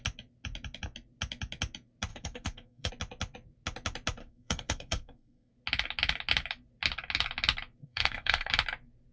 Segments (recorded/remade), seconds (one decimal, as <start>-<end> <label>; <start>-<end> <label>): 0.0-2.1 recorded; 2.1-2.9 remade; 2.9-4.2 recorded; 4.2-5.5 remade; 5.5-7.8 recorded; 7.8-8.5 remade; 8.5-9.1 recorded